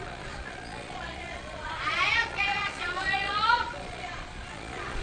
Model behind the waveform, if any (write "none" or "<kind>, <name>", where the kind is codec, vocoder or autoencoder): vocoder, Vocos